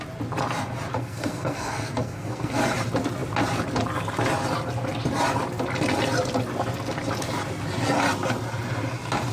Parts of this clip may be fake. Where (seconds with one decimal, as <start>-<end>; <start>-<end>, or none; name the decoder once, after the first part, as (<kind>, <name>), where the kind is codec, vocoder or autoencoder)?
0.9-2.6 (codec, SNAC)